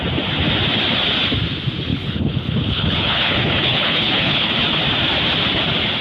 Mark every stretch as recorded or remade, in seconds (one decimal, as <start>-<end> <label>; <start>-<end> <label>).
0.0-1.9 recorded; 1.9-4.5 remade; 4.5-6.0 recorded